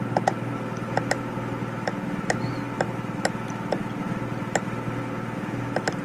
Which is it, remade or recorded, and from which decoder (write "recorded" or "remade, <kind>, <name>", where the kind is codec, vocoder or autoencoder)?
recorded